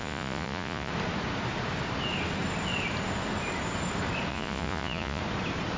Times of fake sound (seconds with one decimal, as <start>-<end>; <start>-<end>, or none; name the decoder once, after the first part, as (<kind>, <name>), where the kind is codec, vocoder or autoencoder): 0.0-0.9 (vocoder, Vocos); 4.3-5.2